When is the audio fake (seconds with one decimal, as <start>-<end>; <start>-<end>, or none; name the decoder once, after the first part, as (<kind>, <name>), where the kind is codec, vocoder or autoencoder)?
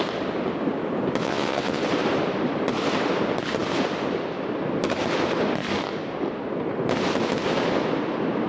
1.2-1.8 (vocoder, WaveNeXt)